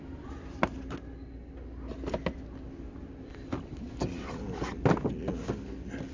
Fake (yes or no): no